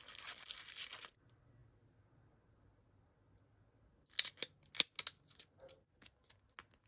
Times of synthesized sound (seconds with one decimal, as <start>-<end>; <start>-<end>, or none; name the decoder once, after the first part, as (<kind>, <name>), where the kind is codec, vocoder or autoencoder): none